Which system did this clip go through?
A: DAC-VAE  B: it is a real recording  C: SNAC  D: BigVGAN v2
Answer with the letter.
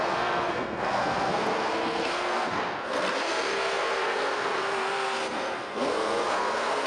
C